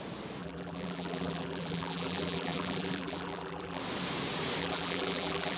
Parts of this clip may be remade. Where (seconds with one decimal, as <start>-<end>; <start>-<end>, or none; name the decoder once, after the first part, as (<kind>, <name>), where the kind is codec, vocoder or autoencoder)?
0.4-3.8 (vocoder, BigVGAN v2); 4.6-5.6